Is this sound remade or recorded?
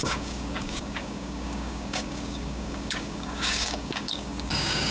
remade